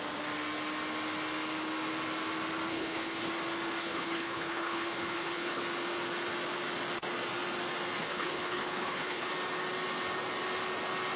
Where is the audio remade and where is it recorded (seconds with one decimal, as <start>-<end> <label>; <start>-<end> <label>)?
0.0-2.7 recorded; 2.7-3.3 remade; 3.3-3.8 recorded; 3.8-5.6 remade; 5.6-8.0 recorded; 8.0-9.3 remade; 9.3-11.2 recorded